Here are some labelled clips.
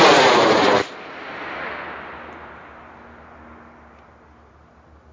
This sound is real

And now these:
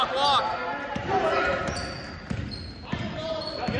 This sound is real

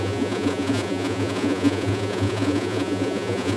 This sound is fake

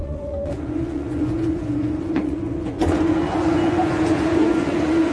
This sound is fake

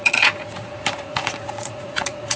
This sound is fake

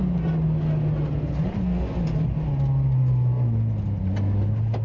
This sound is real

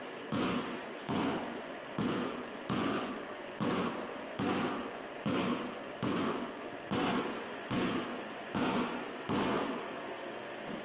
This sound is fake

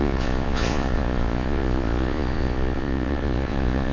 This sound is fake